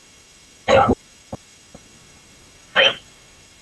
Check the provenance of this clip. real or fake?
fake